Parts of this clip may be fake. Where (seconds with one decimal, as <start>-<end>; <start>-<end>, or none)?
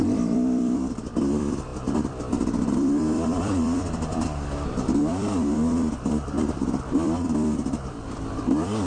0.0-8.9